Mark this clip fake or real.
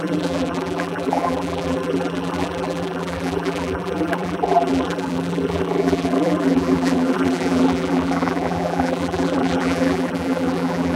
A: fake